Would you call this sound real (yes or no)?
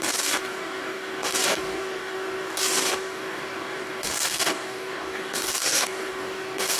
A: no